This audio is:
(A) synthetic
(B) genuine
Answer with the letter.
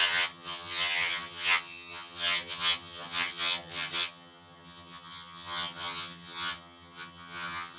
A